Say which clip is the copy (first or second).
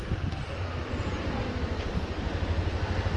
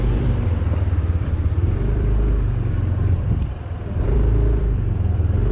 second